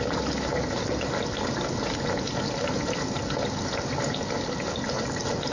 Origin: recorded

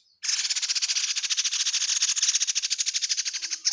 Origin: recorded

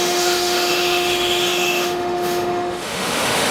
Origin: remade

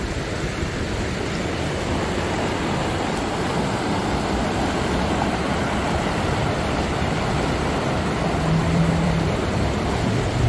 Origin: remade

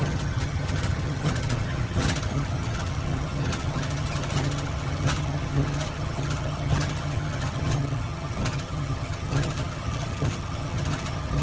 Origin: remade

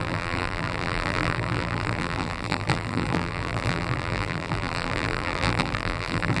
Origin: remade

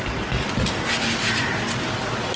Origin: recorded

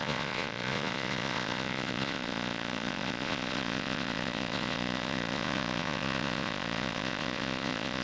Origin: remade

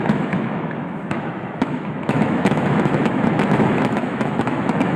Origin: remade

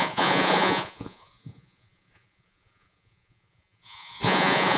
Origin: remade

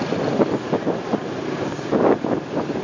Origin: recorded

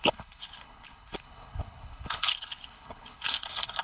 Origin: remade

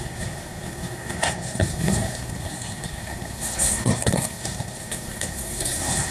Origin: remade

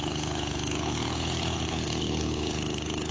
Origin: remade